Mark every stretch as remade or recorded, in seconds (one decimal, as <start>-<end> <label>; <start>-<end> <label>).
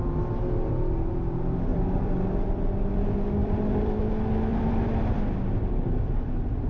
0.0-1.7 recorded; 1.7-2.8 remade; 2.8-3.4 recorded; 3.4-4.1 remade; 4.1-4.5 recorded; 4.5-5.2 remade; 5.2-6.7 recorded